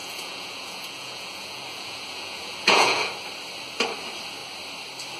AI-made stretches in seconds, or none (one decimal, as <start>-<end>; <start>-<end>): 0.0-3.1